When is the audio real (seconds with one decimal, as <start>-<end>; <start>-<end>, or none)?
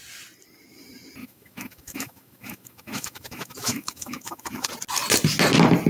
0.0-1.2; 4.7-5.9